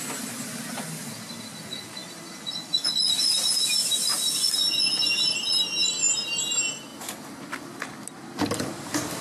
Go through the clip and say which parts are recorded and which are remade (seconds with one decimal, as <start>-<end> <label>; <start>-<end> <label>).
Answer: 0.0-9.2 recorded